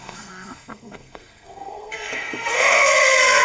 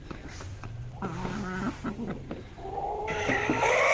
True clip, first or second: second